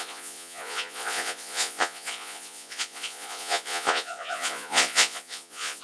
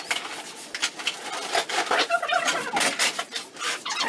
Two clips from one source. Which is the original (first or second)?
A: second